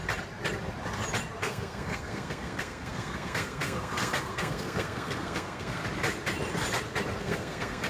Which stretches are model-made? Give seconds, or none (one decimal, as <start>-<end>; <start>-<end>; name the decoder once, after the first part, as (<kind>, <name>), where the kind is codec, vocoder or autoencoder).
1.4-5.8 (codec, SNAC); 7.2-7.9